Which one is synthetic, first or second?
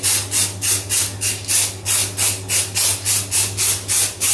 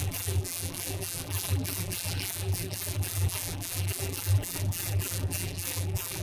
second